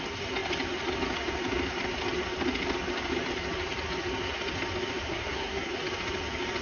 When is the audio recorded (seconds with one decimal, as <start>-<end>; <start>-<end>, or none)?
0.0-5.1; 5.7-6.6